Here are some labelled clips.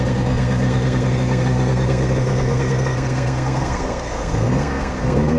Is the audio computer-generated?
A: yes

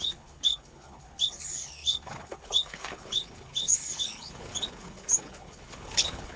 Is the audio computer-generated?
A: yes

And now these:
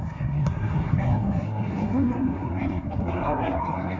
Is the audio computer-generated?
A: yes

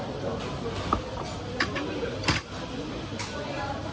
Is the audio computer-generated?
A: no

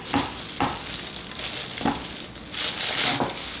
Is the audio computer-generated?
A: no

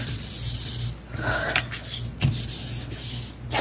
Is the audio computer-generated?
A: no